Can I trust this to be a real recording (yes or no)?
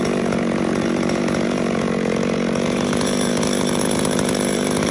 no